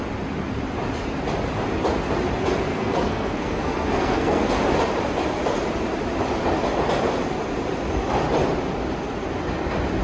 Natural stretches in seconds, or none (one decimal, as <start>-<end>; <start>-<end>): 0.0-2.7; 4.5-10.0